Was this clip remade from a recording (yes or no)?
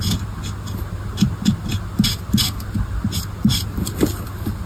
no